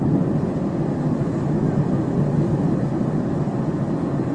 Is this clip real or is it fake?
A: real